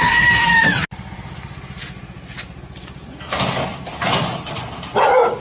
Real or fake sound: real